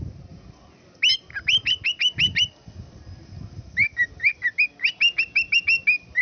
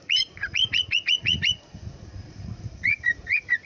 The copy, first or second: second